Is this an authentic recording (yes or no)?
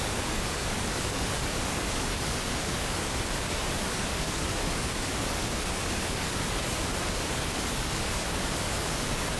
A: no